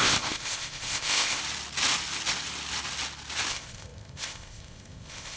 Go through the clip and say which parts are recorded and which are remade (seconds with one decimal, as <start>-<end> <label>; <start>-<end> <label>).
0.0-1.4 remade; 1.4-3.5 recorded; 3.5-5.4 remade